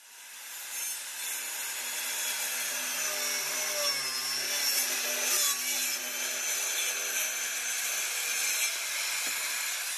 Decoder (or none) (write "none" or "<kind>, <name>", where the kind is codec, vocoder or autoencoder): none